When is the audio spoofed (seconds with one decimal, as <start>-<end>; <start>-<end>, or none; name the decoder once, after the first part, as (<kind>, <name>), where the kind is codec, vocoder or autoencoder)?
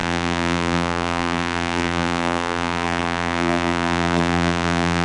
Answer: 0.0-5.0 (vocoder, BigVGAN v2)